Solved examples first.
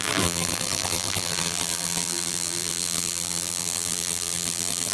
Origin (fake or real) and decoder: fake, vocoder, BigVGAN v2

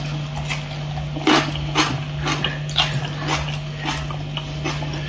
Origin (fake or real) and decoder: real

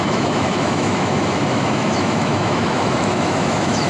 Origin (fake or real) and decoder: fake, autoencoder, DAC-VAE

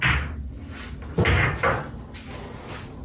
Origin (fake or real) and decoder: real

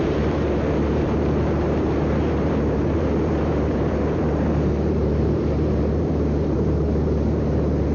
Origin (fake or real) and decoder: fake, vocoder, BigVGAN v2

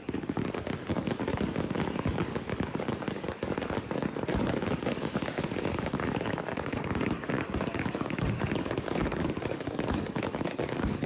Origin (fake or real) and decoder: fake, codec, DAC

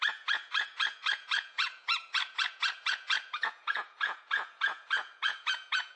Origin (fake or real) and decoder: fake, vocoder, Vocos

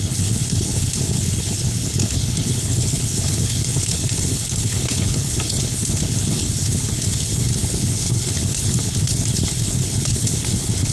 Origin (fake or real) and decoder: fake, codec, HILCodec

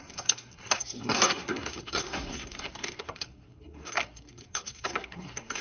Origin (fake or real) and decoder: fake, codec, SNAC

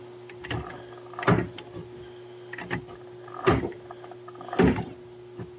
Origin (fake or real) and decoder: real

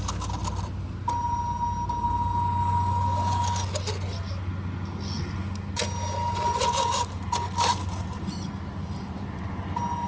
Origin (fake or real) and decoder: real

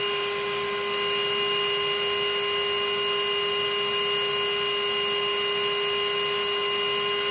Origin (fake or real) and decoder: real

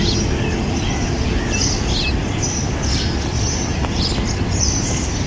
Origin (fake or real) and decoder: real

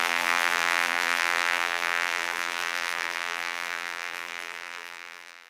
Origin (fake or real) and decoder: fake, vocoder, BigVGAN v2